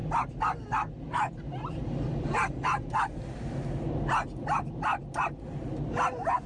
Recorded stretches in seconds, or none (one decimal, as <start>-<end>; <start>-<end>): 0.0-6.5